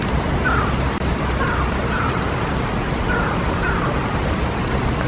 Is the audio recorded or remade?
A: recorded